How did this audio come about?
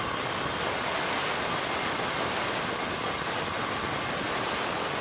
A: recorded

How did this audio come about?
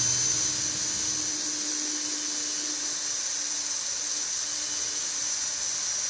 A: recorded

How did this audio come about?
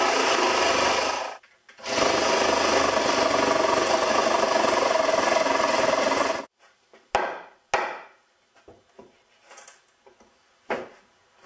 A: recorded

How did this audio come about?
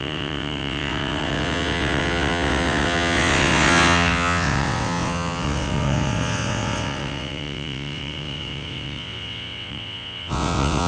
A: remade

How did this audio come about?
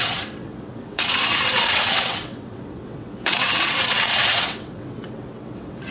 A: remade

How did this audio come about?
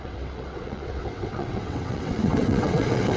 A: remade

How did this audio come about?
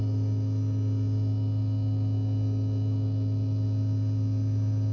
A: recorded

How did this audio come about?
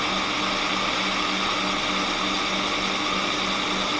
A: recorded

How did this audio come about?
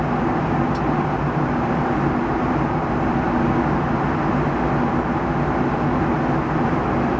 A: recorded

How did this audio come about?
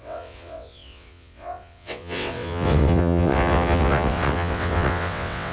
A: remade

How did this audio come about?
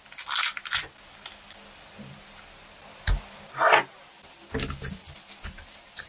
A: recorded